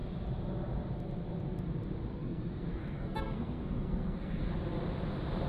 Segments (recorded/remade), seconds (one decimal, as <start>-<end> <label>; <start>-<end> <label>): 0.0-2.1 recorded; 2.1-4.5 remade; 4.5-5.5 recorded